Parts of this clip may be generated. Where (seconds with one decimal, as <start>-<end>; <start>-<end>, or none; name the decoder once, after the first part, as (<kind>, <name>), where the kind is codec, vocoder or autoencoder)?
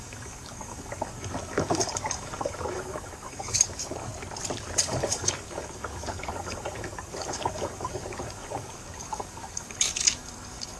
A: 0.0-4.1 (codec, DAC); 4.8-10.8